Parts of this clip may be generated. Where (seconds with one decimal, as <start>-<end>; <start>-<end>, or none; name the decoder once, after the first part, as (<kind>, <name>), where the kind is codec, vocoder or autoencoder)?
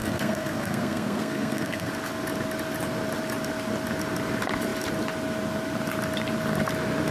0.0-1.9 (codec, SNAC)